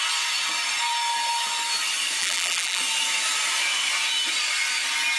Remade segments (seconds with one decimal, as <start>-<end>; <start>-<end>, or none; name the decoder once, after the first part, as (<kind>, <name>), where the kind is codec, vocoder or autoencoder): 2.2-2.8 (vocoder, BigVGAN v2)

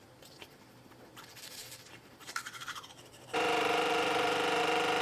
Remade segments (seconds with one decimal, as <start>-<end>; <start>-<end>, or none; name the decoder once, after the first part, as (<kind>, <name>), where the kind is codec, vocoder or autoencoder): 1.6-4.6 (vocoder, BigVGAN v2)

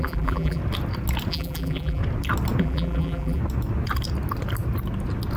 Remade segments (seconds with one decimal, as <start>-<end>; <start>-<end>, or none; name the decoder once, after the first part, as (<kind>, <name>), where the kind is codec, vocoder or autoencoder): 0.0-0.6 (vocoder, BigVGAN v2); 1.3-2.0; 2.6-3.4